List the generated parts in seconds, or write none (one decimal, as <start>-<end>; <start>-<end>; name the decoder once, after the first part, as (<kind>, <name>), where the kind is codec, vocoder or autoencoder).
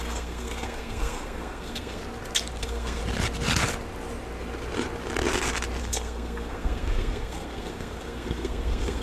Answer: 0.0-2.0 (codec, SNAC); 2.6-3.0; 5.8-9.0